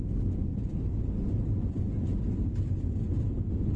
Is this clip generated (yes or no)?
no